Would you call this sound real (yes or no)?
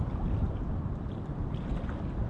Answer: yes